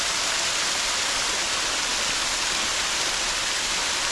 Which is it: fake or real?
real